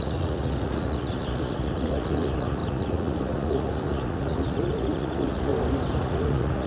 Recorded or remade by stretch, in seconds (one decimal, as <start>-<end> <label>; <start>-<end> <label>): 0.0-5.5 remade; 5.5-6.0 recorded; 6.0-6.7 remade